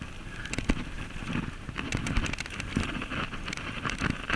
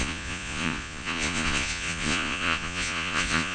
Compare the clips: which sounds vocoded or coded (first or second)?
second